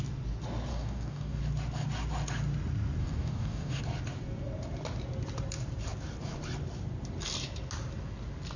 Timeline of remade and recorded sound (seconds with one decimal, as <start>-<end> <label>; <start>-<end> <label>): 0.0-0.7 recorded; 0.7-1.4 remade; 1.4-3.0 recorded; 3.0-3.8 remade; 3.8-8.6 recorded